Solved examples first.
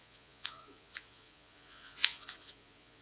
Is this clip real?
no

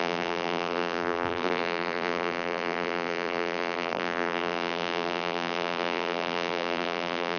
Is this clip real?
no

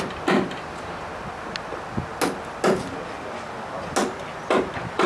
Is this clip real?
yes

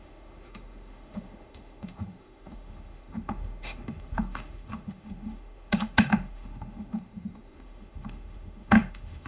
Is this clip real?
no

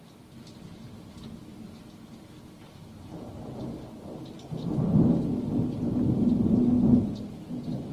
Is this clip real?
yes